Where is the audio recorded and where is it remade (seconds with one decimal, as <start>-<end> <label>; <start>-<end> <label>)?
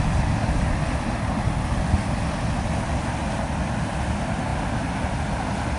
0.0-5.8 recorded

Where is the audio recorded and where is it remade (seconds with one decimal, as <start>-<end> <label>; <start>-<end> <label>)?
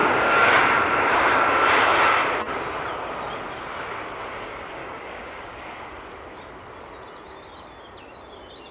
0.0-0.6 remade; 0.6-4.8 recorded; 4.8-5.6 remade; 5.6-8.7 recorded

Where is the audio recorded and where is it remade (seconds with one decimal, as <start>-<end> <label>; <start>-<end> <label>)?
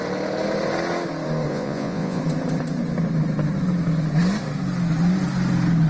0.0-1.5 recorded; 1.5-2.2 remade; 2.2-5.9 recorded